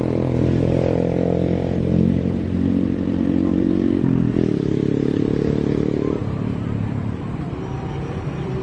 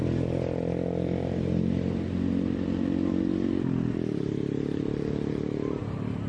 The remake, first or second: first